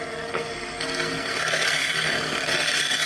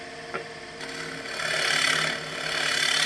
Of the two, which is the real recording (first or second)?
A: second